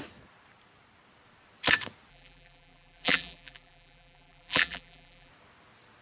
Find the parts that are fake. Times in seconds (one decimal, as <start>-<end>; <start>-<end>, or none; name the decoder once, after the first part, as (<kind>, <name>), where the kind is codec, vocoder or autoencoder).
2.1-5.3 (vocoder, BigVGAN v2)